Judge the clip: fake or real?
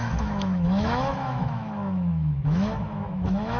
fake